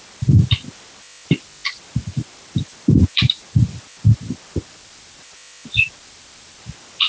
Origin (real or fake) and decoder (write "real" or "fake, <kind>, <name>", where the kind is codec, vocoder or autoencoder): real